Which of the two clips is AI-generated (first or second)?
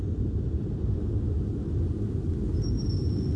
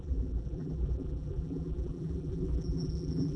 second